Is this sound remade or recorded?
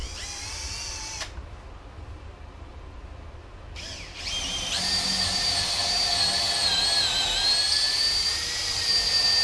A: recorded